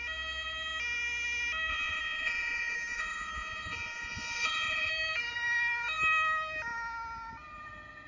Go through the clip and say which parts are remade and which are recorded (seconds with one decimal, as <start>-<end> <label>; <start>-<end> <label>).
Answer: 0.0-1.7 recorded; 1.7-4.9 remade; 4.9-8.1 recorded